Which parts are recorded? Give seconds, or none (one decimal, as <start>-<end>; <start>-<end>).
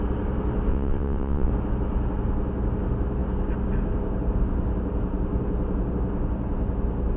0.0-0.7; 1.5-7.2